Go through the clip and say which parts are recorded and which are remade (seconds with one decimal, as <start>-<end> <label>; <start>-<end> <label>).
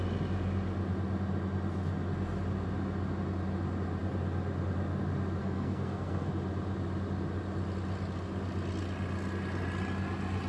0.0-5.4 recorded; 5.4-6.3 remade; 6.3-10.5 recorded